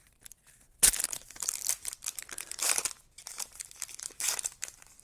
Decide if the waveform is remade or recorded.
remade